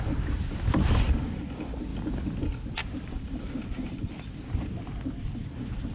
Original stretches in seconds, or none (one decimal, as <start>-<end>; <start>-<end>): 0.0-2.8; 3.4-5.9